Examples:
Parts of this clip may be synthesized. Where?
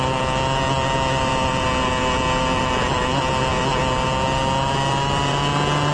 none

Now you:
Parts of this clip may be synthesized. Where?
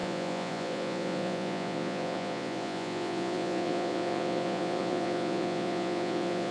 0.0-6.5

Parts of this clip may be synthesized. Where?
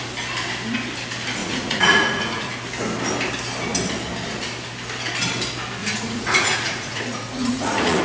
1.4-2.5; 5.8-8.0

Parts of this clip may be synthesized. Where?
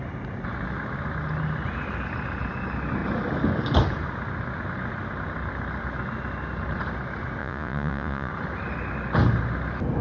7.4-8.3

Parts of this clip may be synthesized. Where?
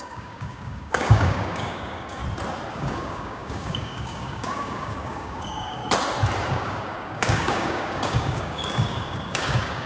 0.0-2.2; 2.7-5.8; 6.5-9.9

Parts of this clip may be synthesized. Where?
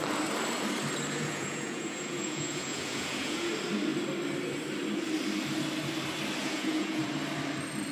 1.1-3.5; 6.4-7.0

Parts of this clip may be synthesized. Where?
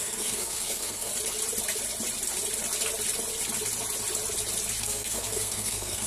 0.0-1.1; 4.8-6.1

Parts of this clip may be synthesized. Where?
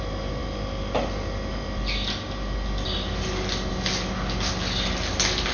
none